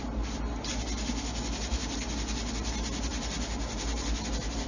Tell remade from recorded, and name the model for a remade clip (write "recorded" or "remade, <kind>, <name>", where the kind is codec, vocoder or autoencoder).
recorded